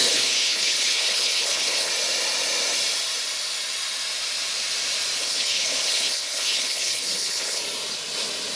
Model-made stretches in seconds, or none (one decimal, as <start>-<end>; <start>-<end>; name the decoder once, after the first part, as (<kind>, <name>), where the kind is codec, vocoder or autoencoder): 0.0-1.9 (codec, HILCodec); 5.2-7.6